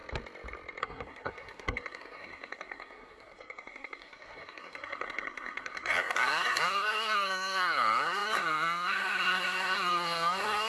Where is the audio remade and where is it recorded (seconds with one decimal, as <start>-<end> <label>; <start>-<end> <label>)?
0.0-0.8 recorded; 0.8-10.7 remade